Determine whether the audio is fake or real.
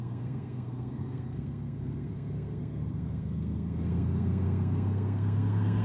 fake